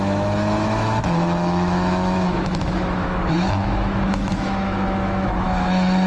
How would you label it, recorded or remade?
remade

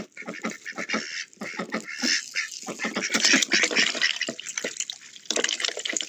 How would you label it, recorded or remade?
recorded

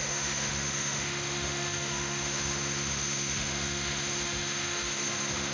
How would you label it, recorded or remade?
remade